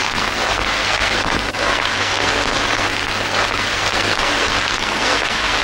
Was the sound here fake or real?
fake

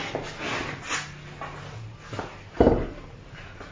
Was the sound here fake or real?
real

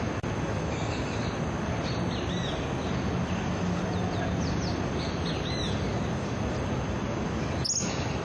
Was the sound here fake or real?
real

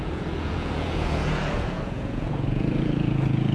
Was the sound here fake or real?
fake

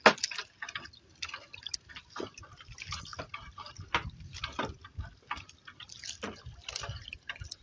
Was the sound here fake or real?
real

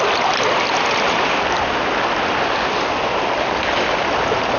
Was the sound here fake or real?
real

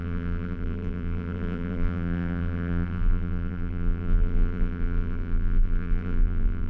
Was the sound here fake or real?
fake